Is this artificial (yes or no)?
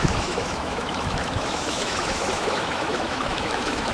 yes